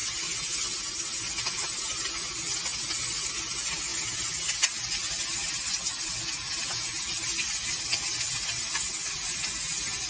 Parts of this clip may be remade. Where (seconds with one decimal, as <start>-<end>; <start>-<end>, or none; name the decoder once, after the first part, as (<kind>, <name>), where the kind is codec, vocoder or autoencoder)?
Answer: none